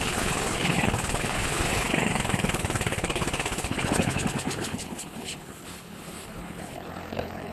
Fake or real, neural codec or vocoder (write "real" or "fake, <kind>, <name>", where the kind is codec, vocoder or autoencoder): fake, codec, HILCodec